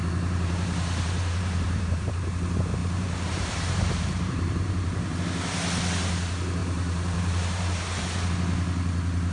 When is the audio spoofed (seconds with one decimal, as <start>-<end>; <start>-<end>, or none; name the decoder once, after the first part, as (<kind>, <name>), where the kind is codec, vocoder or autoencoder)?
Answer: 0.0-2.1 (vocoder, BigVGAN v2); 2.8-5.2; 6.6-8.0